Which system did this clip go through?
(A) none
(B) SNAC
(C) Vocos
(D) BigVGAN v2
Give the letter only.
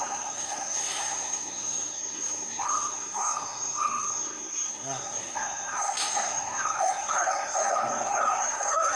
B